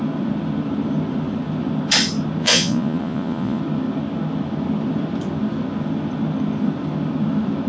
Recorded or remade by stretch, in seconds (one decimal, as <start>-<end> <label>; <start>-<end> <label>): 0.0-2.4 recorded; 2.4-3.6 remade; 3.6-7.7 recorded